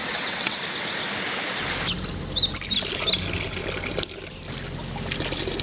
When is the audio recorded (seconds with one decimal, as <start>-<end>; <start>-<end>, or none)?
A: 0.6-5.6